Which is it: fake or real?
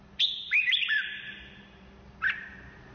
real